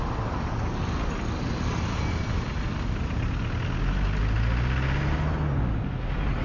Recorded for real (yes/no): yes